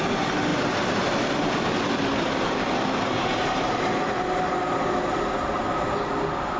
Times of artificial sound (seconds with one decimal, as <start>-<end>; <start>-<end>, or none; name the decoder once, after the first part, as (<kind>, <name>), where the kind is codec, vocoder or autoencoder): none

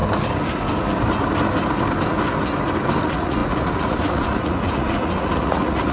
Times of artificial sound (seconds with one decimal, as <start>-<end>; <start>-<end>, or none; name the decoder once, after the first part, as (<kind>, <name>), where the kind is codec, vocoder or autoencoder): 3.0-5.9 (vocoder, Vocos)

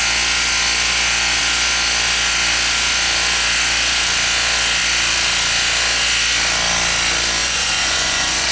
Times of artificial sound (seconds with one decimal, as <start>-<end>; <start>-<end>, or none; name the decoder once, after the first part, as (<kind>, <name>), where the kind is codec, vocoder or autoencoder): 7.4-8.5 (vocoder, Vocos)

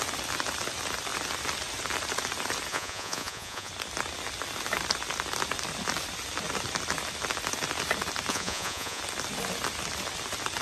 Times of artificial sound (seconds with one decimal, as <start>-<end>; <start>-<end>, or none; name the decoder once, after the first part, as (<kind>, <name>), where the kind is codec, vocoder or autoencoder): 2.7-3.7 (vocoder, Vocos); 8.3-9.0

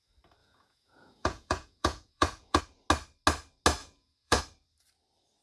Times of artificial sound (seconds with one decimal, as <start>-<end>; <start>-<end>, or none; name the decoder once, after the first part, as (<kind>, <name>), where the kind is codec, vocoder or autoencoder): 0.4-2.6 (vocoder, Vocos); 3.8-4.4

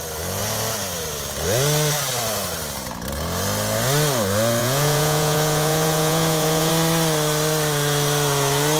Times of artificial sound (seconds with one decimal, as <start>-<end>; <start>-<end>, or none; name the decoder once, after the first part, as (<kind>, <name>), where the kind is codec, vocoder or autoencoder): 4.6-6.7 (vocoder, Vocos)